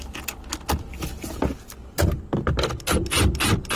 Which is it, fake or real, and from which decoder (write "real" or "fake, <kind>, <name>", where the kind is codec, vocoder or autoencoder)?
real